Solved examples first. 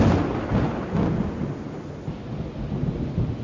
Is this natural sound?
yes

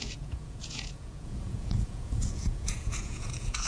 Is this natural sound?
no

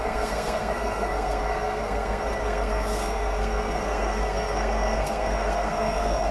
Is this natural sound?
no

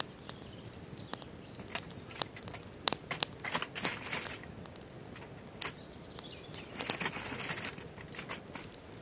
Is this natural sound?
yes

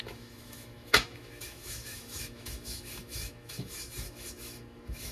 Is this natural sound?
no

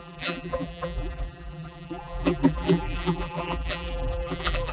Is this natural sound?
no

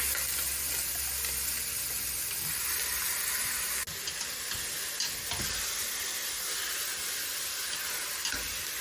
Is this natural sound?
yes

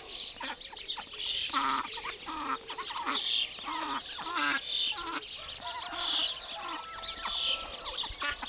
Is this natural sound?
yes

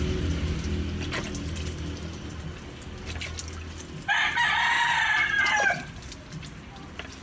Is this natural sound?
yes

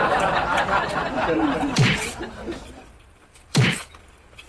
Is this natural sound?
no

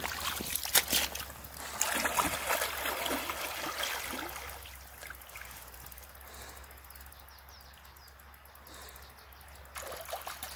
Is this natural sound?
yes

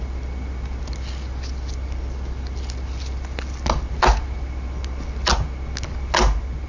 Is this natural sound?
yes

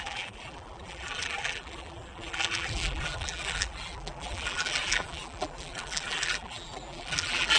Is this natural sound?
no